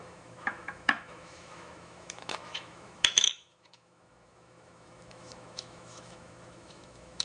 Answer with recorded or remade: remade